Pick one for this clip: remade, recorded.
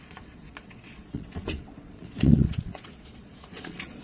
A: remade